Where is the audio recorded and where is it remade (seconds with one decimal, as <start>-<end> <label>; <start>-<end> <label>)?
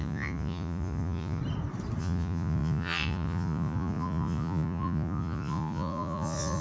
0.0-1.4 remade; 1.4-2.0 recorded; 2.0-6.6 remade